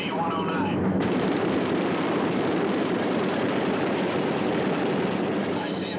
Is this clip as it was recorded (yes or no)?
no